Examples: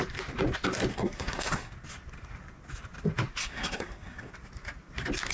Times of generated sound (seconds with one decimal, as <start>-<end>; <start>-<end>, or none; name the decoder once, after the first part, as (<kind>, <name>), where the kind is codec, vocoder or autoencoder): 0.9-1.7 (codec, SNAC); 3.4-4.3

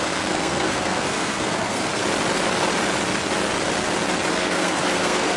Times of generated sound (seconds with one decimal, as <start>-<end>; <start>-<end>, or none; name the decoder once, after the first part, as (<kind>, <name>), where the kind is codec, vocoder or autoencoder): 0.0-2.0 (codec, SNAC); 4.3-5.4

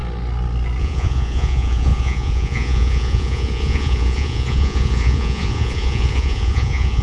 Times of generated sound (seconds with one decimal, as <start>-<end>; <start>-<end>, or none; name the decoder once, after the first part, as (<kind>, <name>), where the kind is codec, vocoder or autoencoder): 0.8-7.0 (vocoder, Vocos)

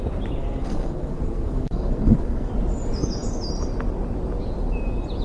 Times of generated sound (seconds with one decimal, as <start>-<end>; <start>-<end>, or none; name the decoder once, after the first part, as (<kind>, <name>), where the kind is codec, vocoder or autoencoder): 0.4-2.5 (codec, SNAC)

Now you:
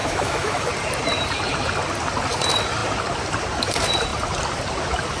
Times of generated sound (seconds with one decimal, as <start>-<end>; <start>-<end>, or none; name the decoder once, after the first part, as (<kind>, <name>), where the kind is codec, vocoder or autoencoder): 0.0-0.7 (autoencoder, DAC-VAE)

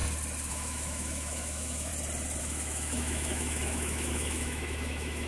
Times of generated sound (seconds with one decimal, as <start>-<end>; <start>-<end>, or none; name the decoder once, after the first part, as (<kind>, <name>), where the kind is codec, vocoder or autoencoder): 0.5-1.9 (autoencoder, DAC-VAE); 2.4-5.3

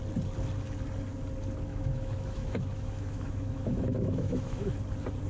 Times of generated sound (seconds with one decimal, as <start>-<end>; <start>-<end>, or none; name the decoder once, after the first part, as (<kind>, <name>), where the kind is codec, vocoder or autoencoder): 1.7-4.7 (autoencoder, DAC-VAE)